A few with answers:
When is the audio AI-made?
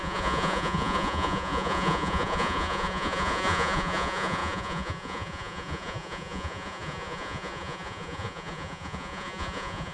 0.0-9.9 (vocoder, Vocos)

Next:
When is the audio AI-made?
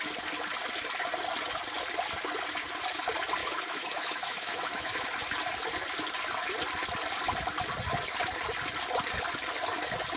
3.4-5.0 (autoencoder, DAC-VAE)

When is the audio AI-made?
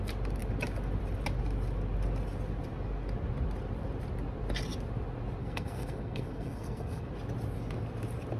5.4-7.1 (codec, SNAC)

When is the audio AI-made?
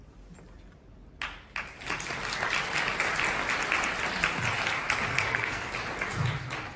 5.1-5.7 (codec, SNAC)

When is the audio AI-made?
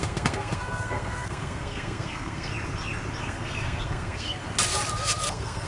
0.0-2.5 (codec, SNAC); 3.2-4.4; 5.3-5.7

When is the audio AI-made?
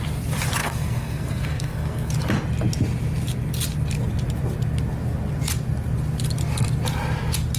0.6-2.1 (codec, SNAC)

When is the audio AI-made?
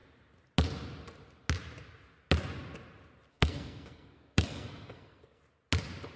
3.3-5.4 (codec, SNAC)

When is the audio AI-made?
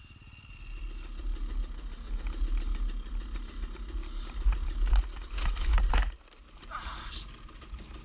5.7-7.1 (vocoder, BigVGAN v2)